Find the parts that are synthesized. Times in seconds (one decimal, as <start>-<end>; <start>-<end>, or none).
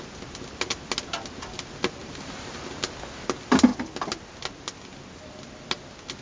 2.0-2.9